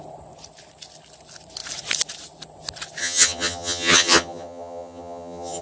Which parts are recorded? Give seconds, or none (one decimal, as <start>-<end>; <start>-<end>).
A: 0.0-3.0